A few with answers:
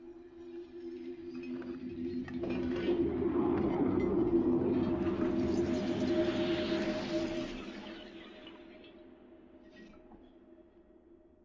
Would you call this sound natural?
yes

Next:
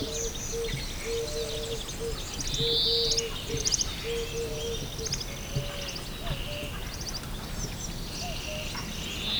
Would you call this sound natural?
yes